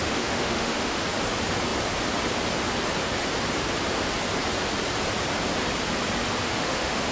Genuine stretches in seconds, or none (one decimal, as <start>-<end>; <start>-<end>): 1.0-6.4